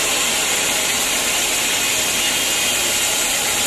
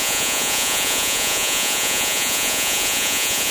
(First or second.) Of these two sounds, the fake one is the second